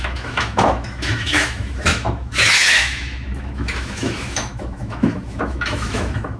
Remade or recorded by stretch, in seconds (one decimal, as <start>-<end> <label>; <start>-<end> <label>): 0.0-6.4 remade